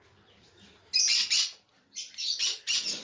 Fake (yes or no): no